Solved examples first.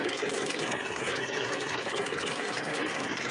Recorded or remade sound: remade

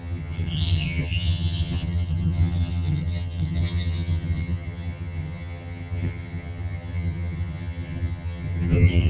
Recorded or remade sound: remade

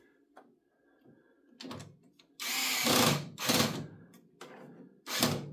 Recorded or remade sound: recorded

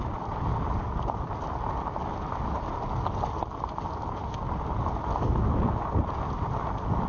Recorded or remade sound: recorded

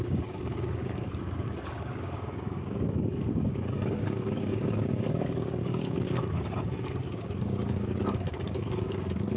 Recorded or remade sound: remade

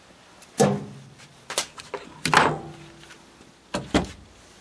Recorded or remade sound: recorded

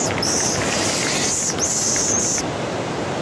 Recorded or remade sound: recorded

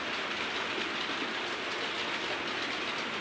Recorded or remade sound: recorded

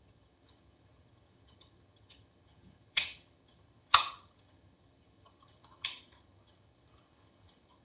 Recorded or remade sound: remade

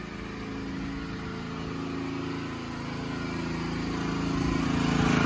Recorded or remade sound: recorded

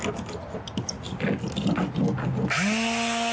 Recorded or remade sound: recorded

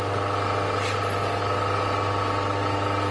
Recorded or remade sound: recorded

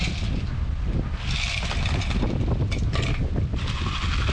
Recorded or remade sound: recorded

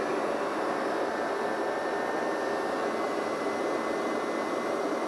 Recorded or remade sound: recorded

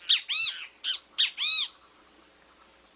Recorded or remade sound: recorded